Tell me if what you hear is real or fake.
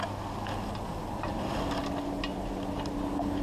real